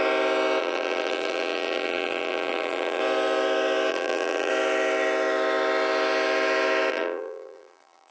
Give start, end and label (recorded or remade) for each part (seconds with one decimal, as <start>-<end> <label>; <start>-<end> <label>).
0.0-0.6 recorded; 0.6-3.0 remade; 3.0-3.9 recorded; 3.9-4.5 remade; 4.5-6.9 recorded; 6.9-8.1 remade